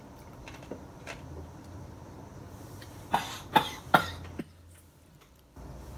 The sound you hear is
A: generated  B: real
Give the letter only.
A